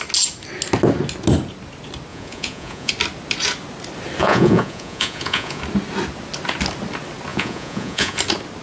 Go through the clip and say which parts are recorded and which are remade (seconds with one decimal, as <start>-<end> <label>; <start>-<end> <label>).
0.0-2.1 recorded; 2.1-2.9 remade; 2.9-4.2 recorded; 4.2-5.6 remade; 5.6-7.3 recorded; 7.3-8.2 remade; 8.2-8.6 recorded